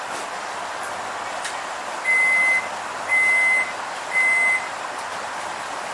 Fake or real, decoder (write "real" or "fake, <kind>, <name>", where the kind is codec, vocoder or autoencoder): real